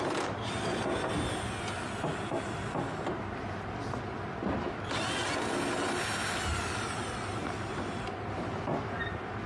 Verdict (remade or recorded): recorded